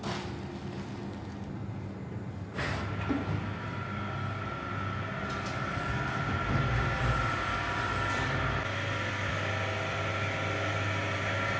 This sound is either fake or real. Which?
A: real